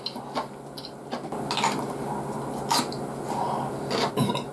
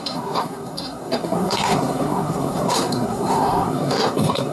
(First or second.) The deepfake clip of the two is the second